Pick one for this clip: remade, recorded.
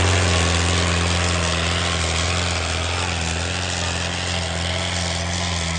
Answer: recorded